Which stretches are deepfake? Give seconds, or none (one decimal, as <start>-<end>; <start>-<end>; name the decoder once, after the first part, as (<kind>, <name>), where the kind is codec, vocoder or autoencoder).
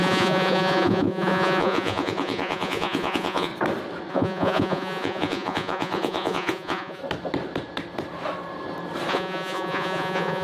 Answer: 0.0-3.5 (vocoder, Vocos); 4.1-7.0; 9.1-10.4